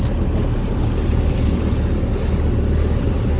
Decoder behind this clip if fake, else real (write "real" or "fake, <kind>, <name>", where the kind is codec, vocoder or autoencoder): real